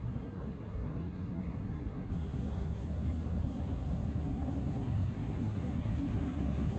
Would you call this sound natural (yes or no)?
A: no